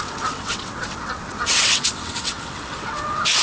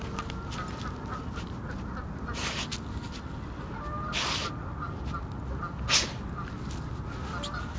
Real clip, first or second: second